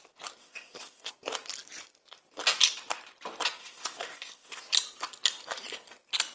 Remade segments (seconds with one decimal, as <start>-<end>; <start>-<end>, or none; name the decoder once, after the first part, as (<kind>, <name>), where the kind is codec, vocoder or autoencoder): 0.4-1.1 (codec, ZipCodec); 3.6-4.6